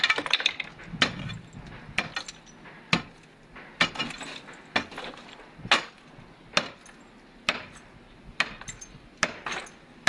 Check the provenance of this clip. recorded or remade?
recorded